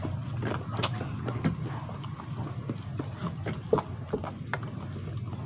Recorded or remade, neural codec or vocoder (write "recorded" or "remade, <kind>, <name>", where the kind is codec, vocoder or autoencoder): recorded